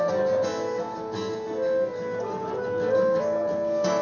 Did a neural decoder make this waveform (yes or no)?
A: no